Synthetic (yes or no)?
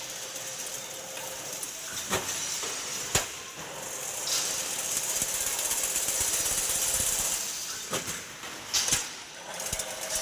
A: no